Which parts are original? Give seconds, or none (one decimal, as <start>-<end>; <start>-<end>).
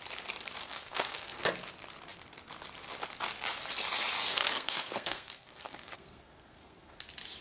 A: 0.0-0.6; 1.5-4.3; 7.0-7.4